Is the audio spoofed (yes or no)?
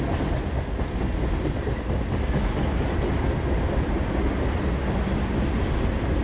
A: no